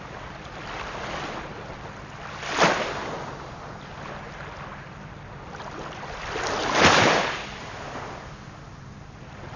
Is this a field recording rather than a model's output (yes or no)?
yes